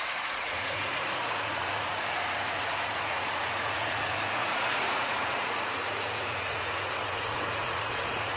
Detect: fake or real fake